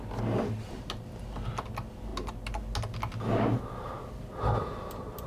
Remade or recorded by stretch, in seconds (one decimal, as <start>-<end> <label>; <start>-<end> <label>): 0.0-5.3 recorded